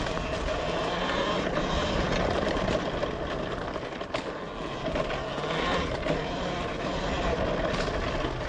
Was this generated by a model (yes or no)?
no